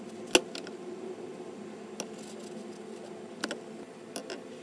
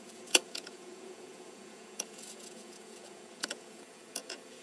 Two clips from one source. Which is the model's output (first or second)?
second